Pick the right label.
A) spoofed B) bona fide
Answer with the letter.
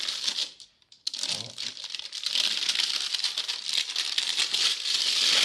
B